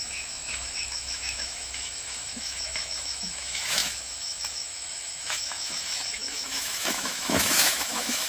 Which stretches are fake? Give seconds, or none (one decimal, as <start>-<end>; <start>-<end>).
0.0-8.3